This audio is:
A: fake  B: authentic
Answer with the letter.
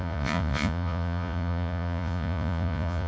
A